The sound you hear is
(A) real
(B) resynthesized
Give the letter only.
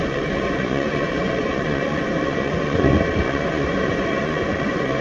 B